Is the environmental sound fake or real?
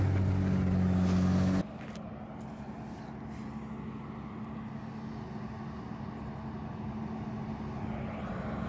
real